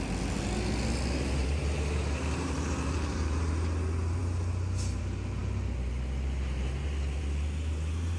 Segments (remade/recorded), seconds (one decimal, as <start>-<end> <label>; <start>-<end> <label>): 0.0-1.4 recorded; 1.4-3.5 remade; 3.5-8.2 recorded